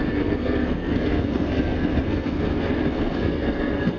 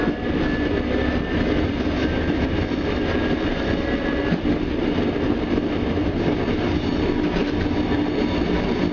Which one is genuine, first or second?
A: second